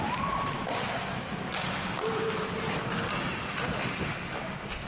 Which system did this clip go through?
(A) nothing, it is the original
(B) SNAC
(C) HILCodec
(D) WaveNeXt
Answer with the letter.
A